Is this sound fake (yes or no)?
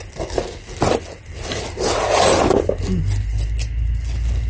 no